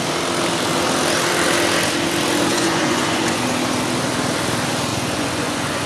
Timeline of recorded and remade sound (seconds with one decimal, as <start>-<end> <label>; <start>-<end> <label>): 0.0-2.5 recorded; 2.5-3.4 remade; 3.4-4.9 recorded; 4.9-5.9 remade